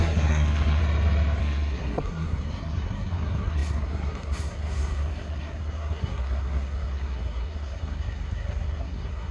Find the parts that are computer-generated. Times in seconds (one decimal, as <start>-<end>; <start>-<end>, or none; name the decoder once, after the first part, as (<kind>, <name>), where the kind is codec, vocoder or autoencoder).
0.0-0.8 (codec, SNAC); 1.4-9.3